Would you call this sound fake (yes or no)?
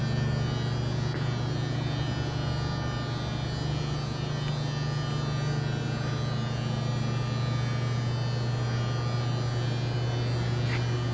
no